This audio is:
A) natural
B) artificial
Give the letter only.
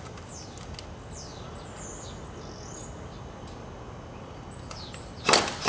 A